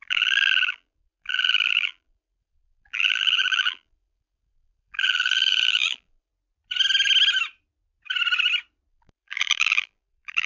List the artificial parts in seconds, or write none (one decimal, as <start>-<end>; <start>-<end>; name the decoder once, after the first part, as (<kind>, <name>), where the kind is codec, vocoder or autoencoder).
0.0-6.3 (vocoder, BigVGAN v2); 8.9-10.5